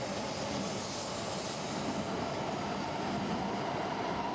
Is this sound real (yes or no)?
no